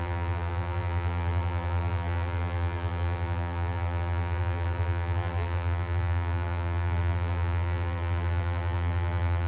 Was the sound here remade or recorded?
remade